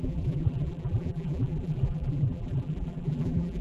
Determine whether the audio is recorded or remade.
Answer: remade